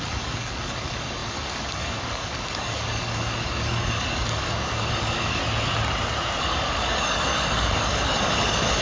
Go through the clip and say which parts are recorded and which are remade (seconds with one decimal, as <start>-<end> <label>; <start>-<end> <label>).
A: 0.0-5.4 remade; 5.4-6.4 recorded; 6.4-8.8 remade